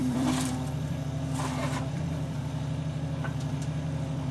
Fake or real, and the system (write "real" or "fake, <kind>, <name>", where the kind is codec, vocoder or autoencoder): fake, vocoder, BigVGAN v2